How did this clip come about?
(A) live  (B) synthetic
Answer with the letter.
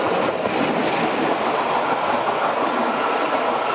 A